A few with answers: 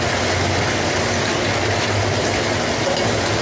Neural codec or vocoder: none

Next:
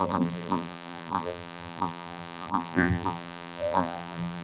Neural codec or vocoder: vocoder, BigVGAN v2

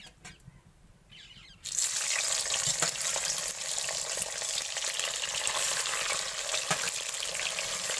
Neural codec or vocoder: none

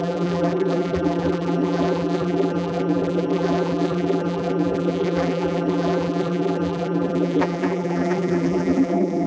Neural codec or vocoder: vocoder, BigVGAN v2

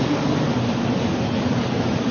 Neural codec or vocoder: vocoder, BigVGAN v2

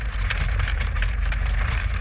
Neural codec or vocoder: vocoder, BigVGAN v2